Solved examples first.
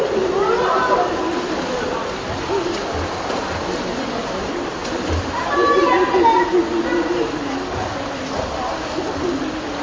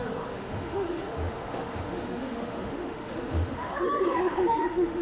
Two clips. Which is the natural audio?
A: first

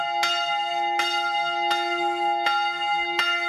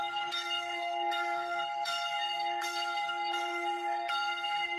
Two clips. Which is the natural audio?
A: first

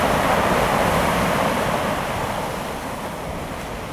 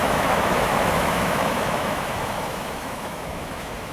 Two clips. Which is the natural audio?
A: first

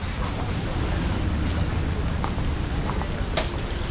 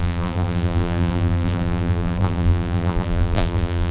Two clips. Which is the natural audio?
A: first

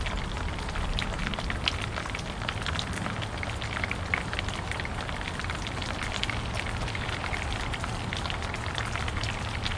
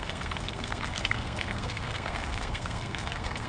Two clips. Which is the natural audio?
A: first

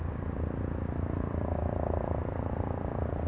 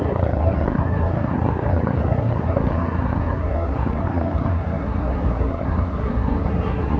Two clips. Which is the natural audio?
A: first